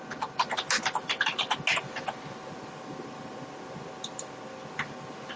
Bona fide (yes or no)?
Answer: yes